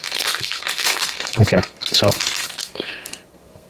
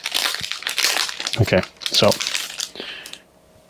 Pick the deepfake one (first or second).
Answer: first